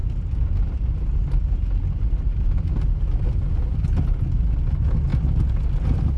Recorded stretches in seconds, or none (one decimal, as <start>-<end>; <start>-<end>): 0.0-6.2